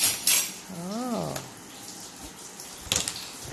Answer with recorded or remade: recorded